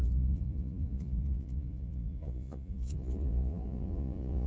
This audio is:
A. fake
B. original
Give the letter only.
A